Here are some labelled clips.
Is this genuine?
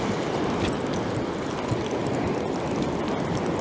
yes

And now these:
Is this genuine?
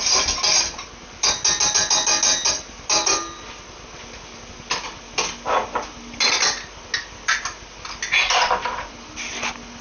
yes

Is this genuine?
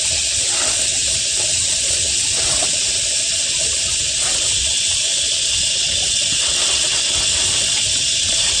no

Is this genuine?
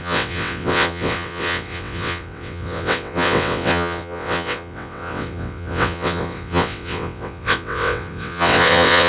no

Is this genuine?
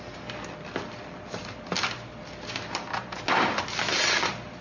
yes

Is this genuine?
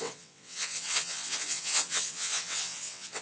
no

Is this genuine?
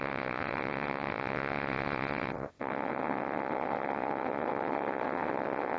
no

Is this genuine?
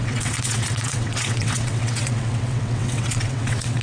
no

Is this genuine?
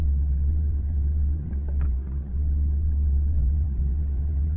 no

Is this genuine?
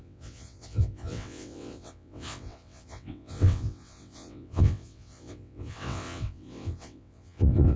no